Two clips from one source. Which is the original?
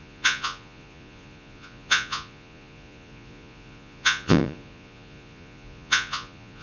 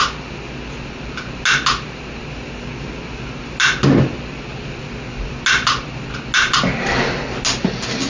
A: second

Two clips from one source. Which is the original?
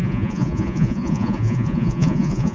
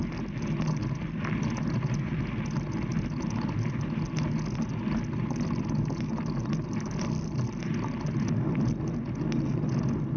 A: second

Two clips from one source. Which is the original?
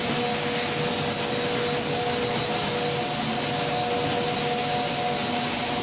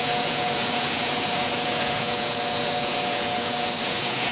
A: first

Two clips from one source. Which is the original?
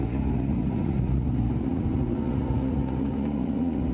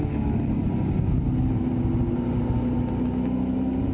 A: second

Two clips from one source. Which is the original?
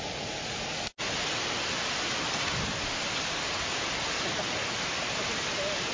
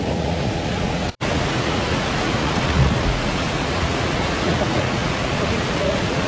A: first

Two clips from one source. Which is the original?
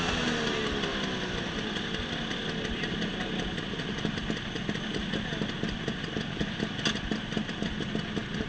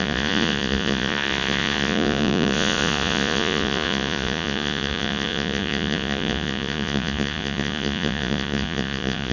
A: first